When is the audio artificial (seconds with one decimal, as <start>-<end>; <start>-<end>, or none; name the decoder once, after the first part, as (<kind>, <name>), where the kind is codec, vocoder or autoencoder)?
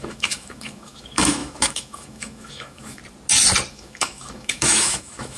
0.0-3.0 (autoencoder, DAC-VAE); 3.7-5.4